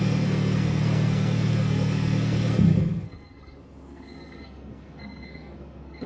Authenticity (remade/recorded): remade